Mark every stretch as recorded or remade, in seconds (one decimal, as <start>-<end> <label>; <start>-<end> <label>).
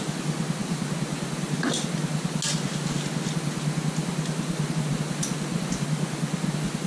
0.0-6.9 recorded